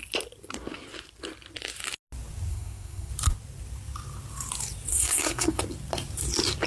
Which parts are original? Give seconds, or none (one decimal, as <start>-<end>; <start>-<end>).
0.0-2.5; 3.1-4.9; 5.6-6.7